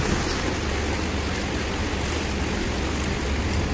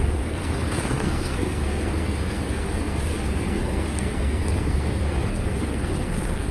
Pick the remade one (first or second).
second